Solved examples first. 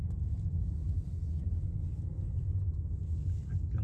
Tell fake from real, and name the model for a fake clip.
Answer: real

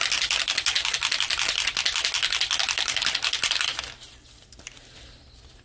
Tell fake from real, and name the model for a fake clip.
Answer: real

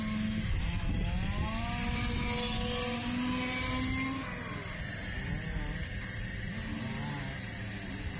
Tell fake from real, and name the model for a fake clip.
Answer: real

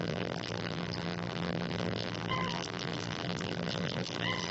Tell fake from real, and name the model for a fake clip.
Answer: fake, vocoder, BigVGAN v2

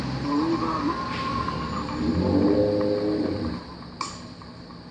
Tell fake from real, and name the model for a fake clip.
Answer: fake, vocoder, BigVGAN v2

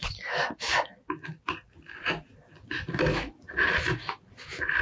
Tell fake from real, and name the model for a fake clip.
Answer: real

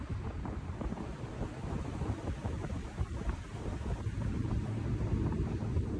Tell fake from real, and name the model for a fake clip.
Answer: fake, vocoder, BigVGAN v2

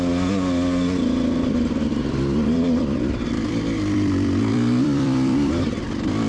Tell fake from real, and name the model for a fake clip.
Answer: fake, vocoder, BigVGAN v2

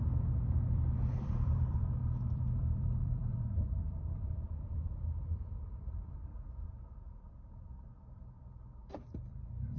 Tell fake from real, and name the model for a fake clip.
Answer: fake, vocoder, BigVGAN v2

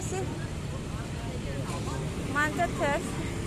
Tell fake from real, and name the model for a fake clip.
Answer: real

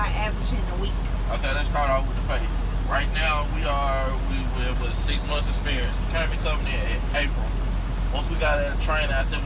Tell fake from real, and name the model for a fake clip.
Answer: real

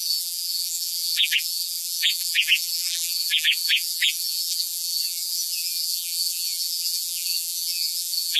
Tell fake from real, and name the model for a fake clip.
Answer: fake, vocoder, BigVGAN v2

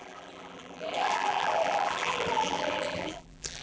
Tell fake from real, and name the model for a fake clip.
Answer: fake, vocoder, BigVGAN v2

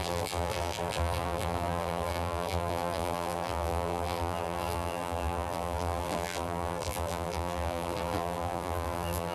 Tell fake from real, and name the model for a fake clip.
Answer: fake, vocoder, BigVGAN v2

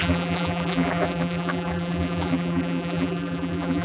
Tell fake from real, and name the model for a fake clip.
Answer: fake, vocoder, BigVGAN v2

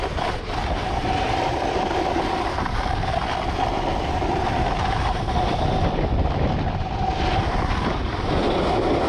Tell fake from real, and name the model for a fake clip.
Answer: fake, vocoder, BigVGAN v2